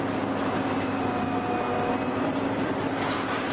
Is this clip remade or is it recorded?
recorded